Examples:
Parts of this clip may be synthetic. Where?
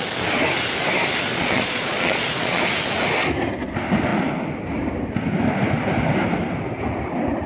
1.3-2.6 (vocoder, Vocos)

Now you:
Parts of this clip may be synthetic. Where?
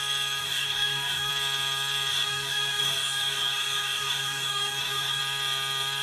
0.4-1.3 (codec, DAC); 2.1-5.2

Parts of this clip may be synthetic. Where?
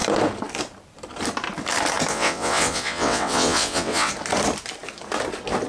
2.1-4.1 (vocoder, WaveNeXt)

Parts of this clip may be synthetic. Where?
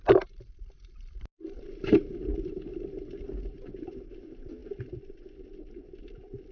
none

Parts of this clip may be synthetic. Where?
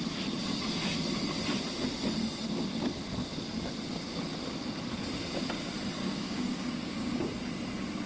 6.0-7.2 (codec, DAC)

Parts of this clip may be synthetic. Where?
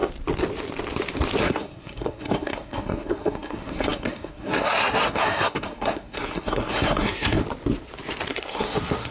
1.4-7.4 (codec, SNAC); 8.3-9.1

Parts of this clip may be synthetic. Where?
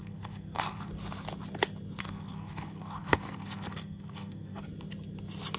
0.0-0.9 (codec, SNAC); 2.0-4.6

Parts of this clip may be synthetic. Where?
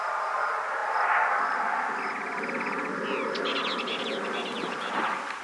none